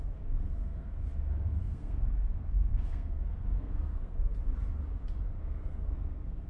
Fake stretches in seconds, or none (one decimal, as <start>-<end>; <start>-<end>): 0.0-4.3; 5.4-6.5